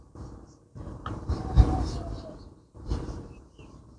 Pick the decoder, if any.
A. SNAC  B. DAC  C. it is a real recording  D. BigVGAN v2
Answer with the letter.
D